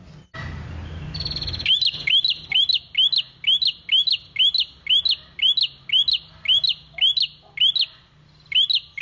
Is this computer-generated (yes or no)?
no